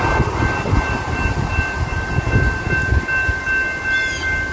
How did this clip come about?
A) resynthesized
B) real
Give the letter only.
B